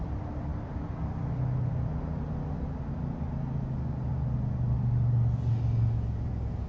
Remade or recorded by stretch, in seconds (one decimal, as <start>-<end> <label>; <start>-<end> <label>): 0.0-6.7 recorded